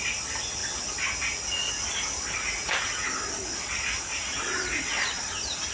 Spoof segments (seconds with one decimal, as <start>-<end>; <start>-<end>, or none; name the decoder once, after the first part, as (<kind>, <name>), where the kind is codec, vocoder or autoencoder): none